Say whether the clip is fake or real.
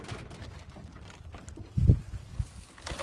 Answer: real